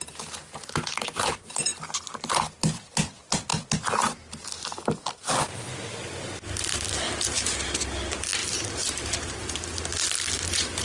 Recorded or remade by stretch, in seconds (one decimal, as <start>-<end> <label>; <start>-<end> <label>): 0.0-8.4 recorded; 8.4-9.1 remade; 9.1-10.8 recorded